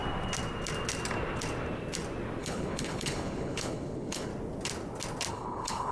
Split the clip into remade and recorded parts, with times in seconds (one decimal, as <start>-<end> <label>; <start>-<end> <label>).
0.0-2.4 recorded; 2.4-4.3 remade; 4.3-5.3 recorded; 5.3-5.9 remade